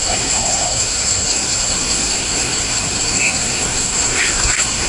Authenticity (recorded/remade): remade